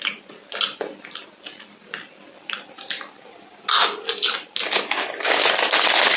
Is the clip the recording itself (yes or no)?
yes